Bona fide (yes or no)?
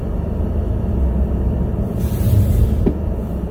yes